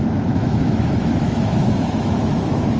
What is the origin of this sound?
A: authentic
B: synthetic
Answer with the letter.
B